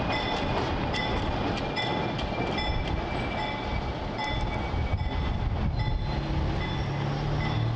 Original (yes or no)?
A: yes